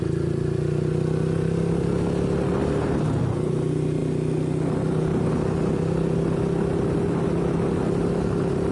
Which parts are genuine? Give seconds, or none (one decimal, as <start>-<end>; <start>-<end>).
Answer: 0.0-2.6; 3.2-8.7